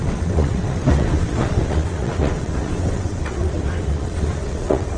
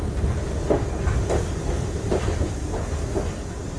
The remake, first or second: first